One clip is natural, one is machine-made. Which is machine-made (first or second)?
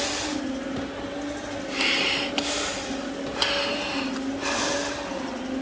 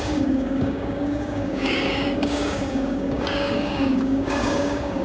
second